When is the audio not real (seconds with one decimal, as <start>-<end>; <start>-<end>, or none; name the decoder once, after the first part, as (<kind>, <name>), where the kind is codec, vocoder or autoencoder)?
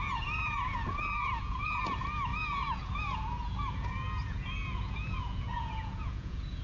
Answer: 0.0-6.6 (vocoder, Vocos)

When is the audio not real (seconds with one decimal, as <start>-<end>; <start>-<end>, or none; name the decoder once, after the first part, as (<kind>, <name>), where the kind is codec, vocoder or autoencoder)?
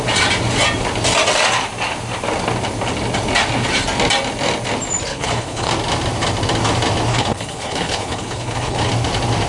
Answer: 5.1-5.7 (codec, HILCodec); 7.1-8.9